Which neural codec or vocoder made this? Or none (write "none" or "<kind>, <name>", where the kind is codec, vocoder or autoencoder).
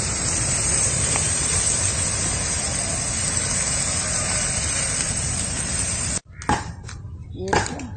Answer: none